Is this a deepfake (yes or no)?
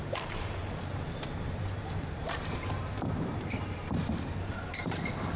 yes